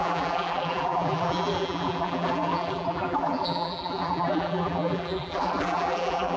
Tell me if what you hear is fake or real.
fake